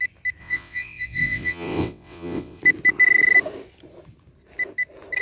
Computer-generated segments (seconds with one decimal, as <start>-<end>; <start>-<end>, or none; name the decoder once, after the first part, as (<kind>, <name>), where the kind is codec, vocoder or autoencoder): 0.4-2.6 (vocoder, WaveNeXt)